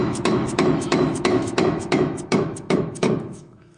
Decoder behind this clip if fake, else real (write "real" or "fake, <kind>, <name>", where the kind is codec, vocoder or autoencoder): fake, autoencoder, DAC-VAE